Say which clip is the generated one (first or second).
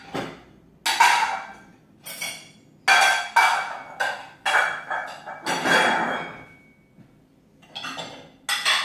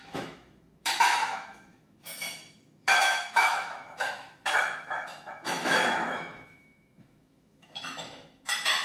second